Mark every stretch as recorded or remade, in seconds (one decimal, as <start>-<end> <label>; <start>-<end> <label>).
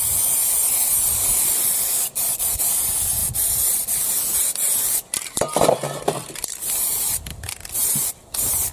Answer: 0.0-3.2 remade; 3.2-4.8 recorded; 4.8-8.7 remade